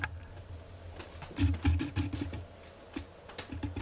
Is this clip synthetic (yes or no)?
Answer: no